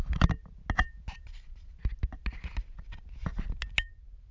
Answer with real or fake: real